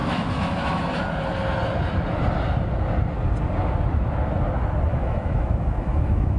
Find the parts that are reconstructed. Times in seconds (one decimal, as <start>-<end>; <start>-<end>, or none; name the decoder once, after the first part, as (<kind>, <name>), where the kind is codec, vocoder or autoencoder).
0.0-0.8 (autoencoder, DAC-VAE); 4.9-6.4

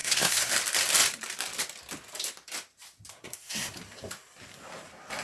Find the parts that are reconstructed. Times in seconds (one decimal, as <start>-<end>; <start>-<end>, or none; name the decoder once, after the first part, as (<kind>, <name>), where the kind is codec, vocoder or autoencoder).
0.0-0.5 (codec, SNAC); 3.1-3.8

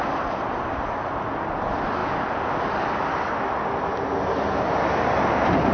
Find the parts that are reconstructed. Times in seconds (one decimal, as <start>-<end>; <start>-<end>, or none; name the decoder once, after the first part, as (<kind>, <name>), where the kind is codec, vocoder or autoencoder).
none

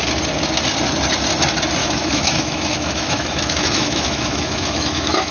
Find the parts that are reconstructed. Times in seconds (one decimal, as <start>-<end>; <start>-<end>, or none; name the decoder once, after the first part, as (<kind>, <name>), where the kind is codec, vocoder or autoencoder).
1.8-5.3 (autoencoder, DAC-VAE)

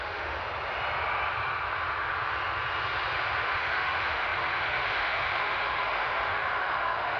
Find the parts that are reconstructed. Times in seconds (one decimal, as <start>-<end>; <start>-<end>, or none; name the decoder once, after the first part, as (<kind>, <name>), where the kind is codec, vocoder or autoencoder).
0.0-0.4 (autoencoder, DAC-VAE); 3.4-7.2

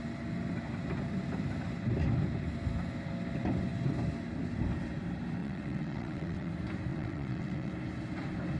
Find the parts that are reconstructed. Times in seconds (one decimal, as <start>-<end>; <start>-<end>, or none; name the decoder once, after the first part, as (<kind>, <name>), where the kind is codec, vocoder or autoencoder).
5.4-6.5 (vocoder, WaveNeXt); 6.9-7.7

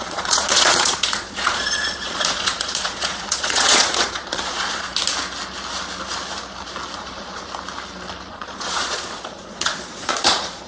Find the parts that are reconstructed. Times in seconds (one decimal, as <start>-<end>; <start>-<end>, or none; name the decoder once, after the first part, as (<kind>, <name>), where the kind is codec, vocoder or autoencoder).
0.0-4.9 (vocoder, Vocos); 7.0-7.4; 8.3-10.7